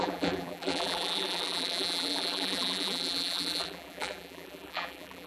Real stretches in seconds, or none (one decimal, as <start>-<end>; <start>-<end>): none